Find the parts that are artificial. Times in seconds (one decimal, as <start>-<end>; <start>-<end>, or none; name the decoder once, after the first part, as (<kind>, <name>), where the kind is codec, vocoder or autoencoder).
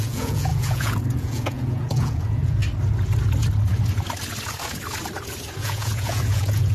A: 0.0-2.6 (vocoder, Vocos); 5.6-6.7